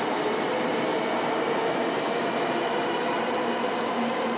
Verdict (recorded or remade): recorded